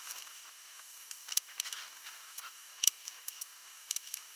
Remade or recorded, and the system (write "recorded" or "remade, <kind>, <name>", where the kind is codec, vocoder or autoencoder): remade, codec, DAC